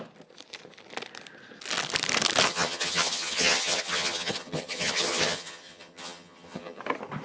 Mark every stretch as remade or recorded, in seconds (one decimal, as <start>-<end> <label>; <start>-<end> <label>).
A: 0.0-2.5 recorded; 2.5-6.8 remade; 6.8-7.2 recorded